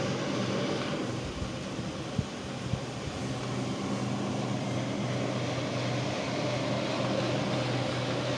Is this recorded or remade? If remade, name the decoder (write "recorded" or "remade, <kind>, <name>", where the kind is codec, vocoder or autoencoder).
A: recorded